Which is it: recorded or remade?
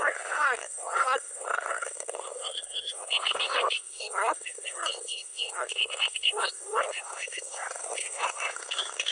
remade